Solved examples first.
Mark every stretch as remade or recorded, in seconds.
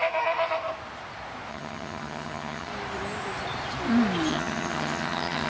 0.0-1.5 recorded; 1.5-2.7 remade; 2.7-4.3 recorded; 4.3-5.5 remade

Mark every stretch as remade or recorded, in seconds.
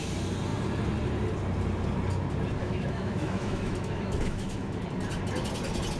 0.0-2.6 recorded; 2.6-4.8 remade; 4.8-6.0 recorded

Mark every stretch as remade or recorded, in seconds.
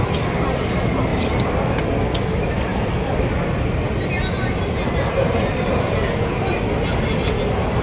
0.0-7.8 recorded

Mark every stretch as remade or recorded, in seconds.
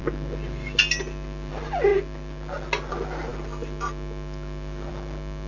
0.0-5.5 recorded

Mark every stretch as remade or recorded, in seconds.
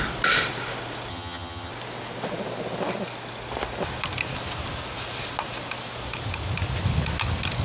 0.0-1.1 recorded; 1.1-1.7 remade; 1.7-7.6 recorded